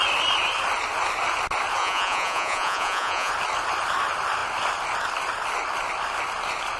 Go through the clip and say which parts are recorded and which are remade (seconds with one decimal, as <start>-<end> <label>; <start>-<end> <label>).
0.0-1.8 recorded; 1.8-3.3 remade; 3.3-6.8 recorded